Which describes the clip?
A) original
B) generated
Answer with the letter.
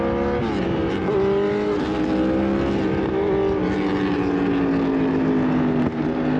A